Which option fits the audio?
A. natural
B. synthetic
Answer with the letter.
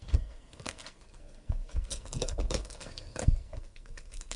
B